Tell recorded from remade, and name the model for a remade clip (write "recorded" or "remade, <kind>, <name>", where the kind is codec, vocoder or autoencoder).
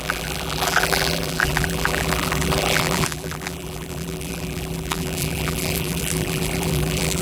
remade, vocoder, BigVGAN v2